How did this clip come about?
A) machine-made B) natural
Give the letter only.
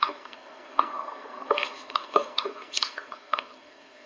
A